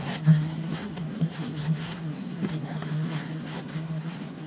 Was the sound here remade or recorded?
remade